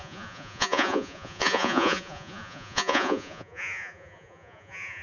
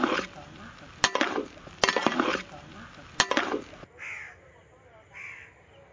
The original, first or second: second